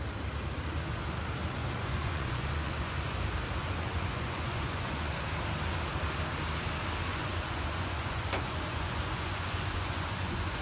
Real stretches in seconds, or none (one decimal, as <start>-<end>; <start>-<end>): 0.0-1.6; 3.2-3.6; 5.2-7.1